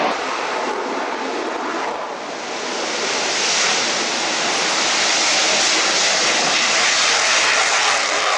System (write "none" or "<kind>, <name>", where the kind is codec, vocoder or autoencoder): none